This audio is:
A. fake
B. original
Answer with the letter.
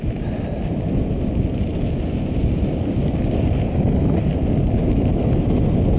B